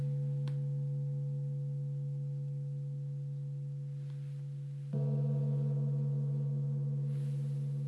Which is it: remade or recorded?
recorded